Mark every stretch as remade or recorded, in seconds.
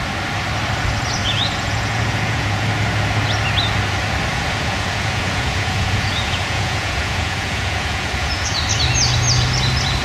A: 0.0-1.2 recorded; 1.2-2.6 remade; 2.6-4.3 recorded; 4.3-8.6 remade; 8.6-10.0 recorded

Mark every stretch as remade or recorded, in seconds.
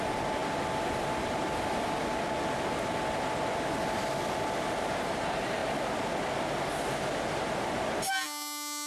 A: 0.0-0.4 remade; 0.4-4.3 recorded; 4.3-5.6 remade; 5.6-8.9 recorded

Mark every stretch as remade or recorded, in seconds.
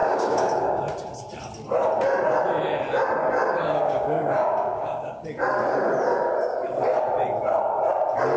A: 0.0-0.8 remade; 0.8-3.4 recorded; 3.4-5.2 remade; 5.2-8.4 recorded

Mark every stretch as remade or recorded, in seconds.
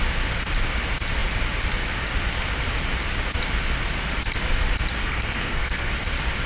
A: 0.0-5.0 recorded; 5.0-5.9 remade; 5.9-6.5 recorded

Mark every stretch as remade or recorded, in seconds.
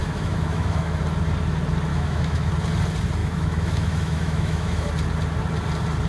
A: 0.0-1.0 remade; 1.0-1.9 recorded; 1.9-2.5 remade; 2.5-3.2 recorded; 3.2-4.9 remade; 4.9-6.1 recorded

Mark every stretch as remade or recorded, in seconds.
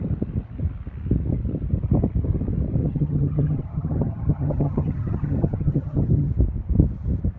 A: 0.0-2.8 recorded; 2.8-6.3 remade; 6.3-7.4 recorded